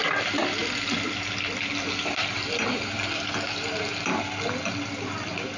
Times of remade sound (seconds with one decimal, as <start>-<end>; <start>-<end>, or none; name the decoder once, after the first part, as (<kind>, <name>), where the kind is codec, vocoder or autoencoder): none